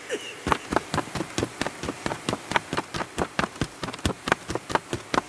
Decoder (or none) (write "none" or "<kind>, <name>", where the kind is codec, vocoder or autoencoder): none